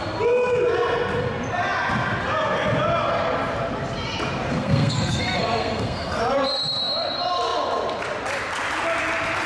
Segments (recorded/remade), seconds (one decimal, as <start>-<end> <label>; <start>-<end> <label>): 0.0-4.5 recorded; 4.5-6.2 remade; 6.2-9.5 recorded